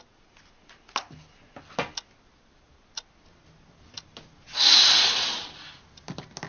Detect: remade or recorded recorded